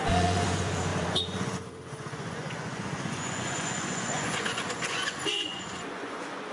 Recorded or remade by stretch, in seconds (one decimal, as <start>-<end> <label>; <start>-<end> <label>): 0.0-6.5 remade